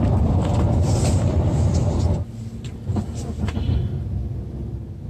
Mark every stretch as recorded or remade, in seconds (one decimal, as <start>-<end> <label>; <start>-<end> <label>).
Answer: 0.0-5.1 recorded